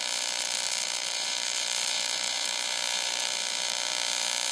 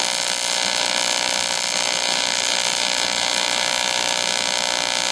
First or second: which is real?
second